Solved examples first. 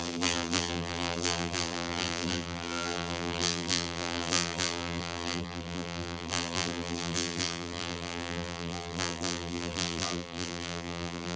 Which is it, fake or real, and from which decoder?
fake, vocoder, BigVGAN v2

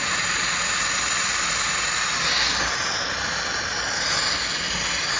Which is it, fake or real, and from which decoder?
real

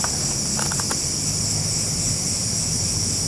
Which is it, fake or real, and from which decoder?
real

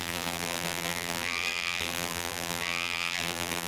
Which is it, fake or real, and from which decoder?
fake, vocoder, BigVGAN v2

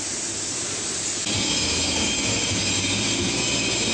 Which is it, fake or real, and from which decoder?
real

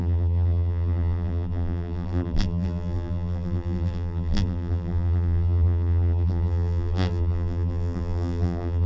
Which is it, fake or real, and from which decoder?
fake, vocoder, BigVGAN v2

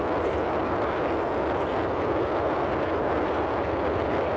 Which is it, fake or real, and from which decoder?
real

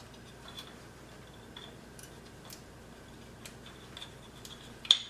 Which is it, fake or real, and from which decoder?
real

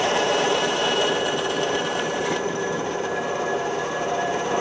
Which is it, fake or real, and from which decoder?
fake, vocoder, BigVGAN v2